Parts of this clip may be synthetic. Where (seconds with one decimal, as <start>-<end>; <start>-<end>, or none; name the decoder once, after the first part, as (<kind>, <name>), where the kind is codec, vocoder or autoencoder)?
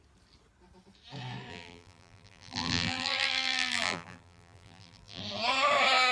1.5-5.2 (vocoder, BigVGAN v2)